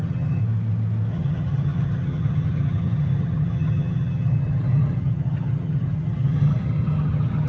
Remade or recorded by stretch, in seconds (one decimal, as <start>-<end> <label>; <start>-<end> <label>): 0.0-0.4 remade; 0.4-1.1 recorded; 1.1-7.5 remade